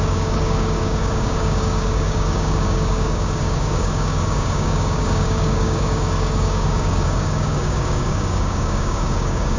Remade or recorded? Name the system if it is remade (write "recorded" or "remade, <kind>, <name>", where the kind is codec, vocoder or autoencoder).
remade, codec, DAC